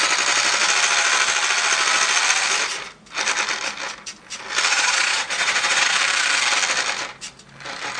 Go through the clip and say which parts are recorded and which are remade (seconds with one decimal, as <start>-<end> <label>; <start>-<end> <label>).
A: 0.0-4.7 recorded; 4.7-6.0 remade; 6.0-8.0 recorded

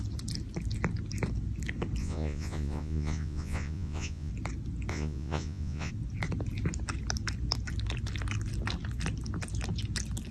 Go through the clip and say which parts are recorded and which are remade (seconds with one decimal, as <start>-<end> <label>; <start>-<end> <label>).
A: 0.0-2.0 recorded; 2.0-4.3 remade; 4.3-4.9 recorded; 4.9-5.9 remade; 5.9-10.3 recorded

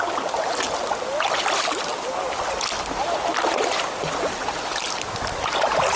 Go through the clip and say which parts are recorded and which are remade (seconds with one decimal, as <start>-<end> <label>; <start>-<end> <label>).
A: 0.0-6.0 recorded

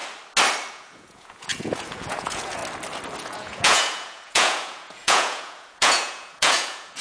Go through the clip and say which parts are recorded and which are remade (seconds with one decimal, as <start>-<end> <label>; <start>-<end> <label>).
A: 0.0-0.7 recorded; 0.7-2.6 remade; 2.6-3.2 recorded; 3.2-7.0 remade

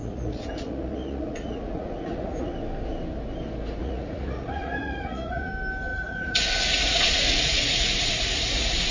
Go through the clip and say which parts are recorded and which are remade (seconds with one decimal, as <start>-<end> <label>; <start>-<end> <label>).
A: 0.0-2.5 remade; 2.5-3.8 recorded; 3.8-5.5 remade; 5.5-5.9 recorded; 5.9-8.9 remade

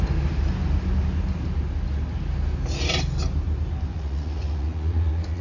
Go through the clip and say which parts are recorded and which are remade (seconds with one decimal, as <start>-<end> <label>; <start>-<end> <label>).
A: 0.0-3.9 recorded; 3.9-5.4 remade

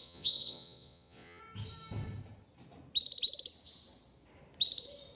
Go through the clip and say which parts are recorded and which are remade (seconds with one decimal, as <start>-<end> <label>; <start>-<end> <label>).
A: 0.0-1.4 remade; 1.4-5.2 recorded

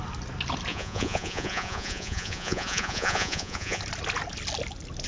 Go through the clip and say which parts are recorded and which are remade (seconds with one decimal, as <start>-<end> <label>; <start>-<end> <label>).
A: 0.0-0.7 recorded; 0.7-3.8 remade; 3.8-5.1 recorded